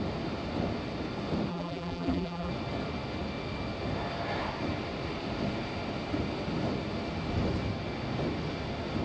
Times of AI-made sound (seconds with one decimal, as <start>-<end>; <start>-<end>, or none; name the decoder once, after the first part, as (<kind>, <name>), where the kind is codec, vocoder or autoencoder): 1.5-2.5 (vocoder, BigVGAN v2)